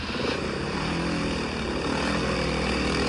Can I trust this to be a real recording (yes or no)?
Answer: yes